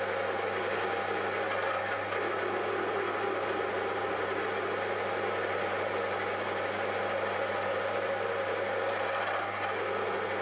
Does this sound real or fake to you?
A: real